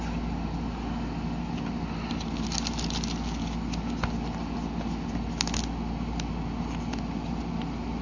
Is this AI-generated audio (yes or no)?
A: no